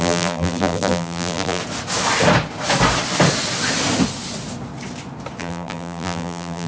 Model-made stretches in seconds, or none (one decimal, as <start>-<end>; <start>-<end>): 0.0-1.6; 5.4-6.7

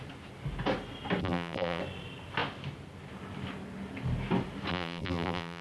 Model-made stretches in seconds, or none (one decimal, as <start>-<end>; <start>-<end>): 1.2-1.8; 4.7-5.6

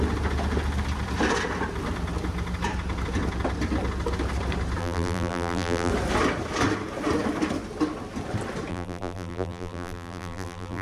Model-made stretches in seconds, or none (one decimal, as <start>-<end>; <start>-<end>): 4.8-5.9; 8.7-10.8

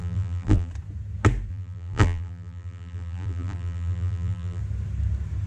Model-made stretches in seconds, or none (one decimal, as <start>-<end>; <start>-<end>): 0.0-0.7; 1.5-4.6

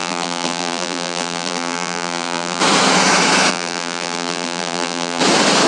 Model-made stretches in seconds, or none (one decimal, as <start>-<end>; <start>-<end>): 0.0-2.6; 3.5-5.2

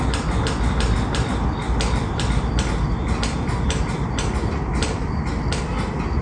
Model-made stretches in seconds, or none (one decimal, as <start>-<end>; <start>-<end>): none